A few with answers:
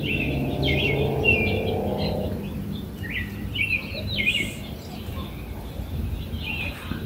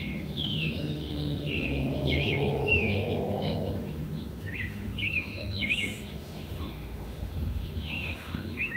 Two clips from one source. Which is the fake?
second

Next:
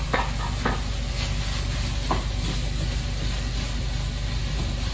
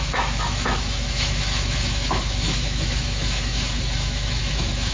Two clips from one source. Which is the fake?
second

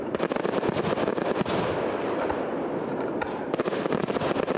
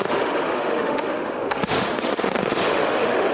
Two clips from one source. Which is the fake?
second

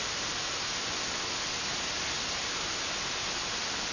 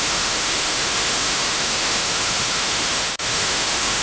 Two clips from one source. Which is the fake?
second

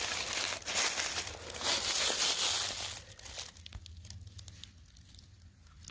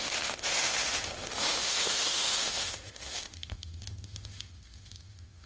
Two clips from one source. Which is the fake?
second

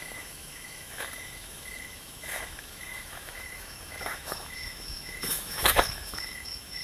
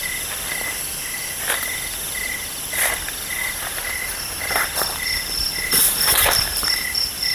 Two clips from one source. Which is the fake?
first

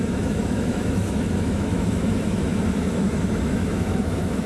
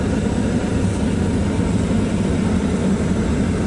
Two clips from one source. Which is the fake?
first